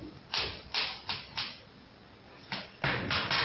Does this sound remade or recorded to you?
recorded